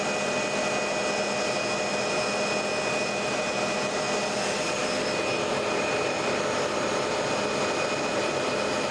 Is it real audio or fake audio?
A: real